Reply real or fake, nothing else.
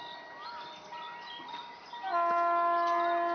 real